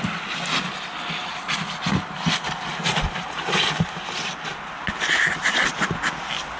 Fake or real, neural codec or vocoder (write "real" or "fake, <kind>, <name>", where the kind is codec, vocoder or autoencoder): real